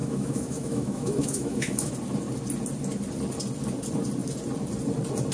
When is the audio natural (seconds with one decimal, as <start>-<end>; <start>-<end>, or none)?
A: 1.9-5.3